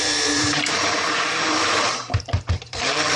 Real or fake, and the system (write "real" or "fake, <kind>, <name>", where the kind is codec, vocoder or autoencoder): fake, vocoder, BigVGAN v2